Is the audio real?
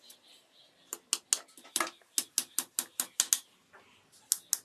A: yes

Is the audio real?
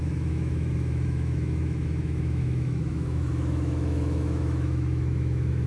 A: no